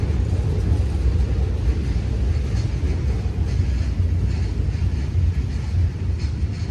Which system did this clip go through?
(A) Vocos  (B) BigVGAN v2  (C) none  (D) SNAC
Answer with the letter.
C